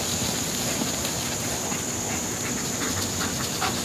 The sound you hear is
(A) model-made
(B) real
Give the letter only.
B